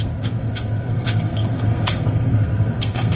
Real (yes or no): no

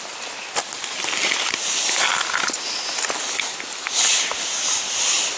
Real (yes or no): yes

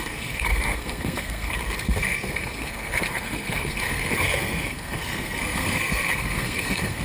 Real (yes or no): no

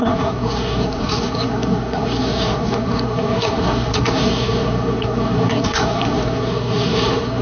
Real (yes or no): no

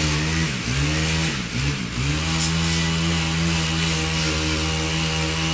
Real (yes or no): yes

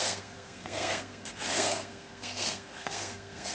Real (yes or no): no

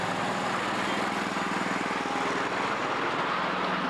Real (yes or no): yes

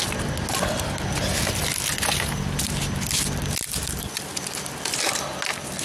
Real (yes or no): yes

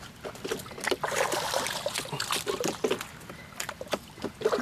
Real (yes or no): yes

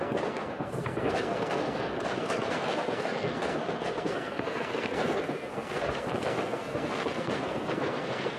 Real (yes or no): no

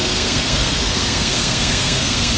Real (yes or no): no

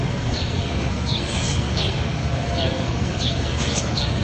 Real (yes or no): no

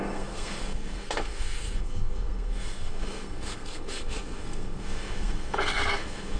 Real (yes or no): no